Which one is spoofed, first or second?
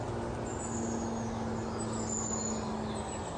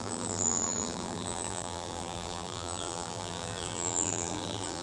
second